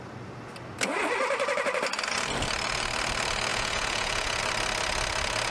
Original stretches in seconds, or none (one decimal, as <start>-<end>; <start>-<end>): 0.0-3.5; 4.4-5.5